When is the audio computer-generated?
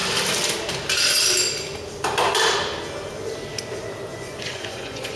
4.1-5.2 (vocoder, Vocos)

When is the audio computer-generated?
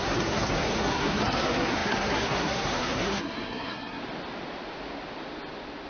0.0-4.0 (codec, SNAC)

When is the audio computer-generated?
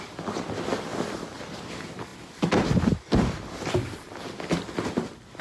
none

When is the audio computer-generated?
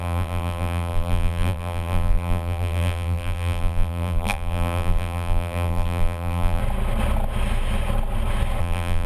0.0-6.6 (vocoder, BigVGAN v2); 8.6-9.1